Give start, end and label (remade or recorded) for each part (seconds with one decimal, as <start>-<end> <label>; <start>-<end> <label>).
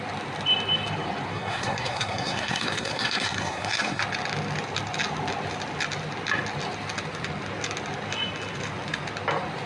0.0-1.3 recorded; 1.3-4.0 remade; 4.0-9.7 recorded